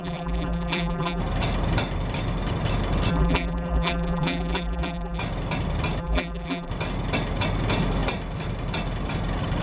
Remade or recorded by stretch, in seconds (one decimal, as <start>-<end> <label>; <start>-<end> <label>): 0.0-1.2 remade; 1.2-3.1 recorded; 3.1-5.2 remade; 5.2-6.0 recorded; 6.0-6.7 remade; 6.7-9.6 recorded